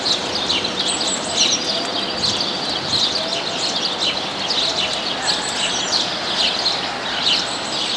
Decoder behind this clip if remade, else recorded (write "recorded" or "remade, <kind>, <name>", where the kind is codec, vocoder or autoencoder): recorded